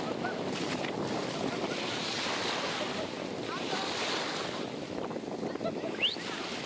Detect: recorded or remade recorded